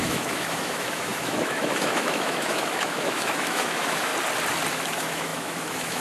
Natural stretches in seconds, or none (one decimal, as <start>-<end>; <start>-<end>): 4.1-4.7